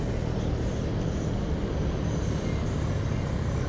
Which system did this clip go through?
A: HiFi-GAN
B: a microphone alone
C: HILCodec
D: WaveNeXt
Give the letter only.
B